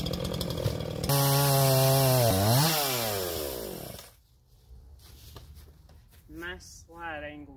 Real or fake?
real